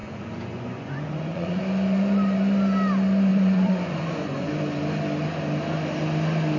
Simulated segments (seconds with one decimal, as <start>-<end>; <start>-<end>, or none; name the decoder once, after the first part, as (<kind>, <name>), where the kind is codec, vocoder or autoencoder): 0.0-1.6 (vocoder, Vocos); 3.3-4.5